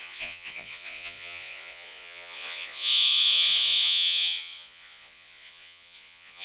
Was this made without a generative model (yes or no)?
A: no